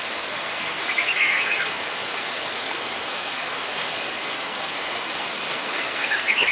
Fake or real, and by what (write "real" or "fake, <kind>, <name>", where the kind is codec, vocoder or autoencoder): fake, codec, SNAC